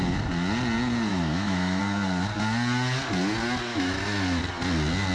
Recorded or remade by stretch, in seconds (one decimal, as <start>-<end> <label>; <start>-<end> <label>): 0.0-1.1 recorded; 1.1-1.8 remade; 1.8-3.7 recorded; 3.7-4.4 remade; 4.4-5.1 recorded